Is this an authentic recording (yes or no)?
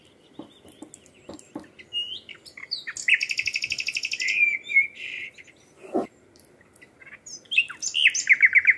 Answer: yes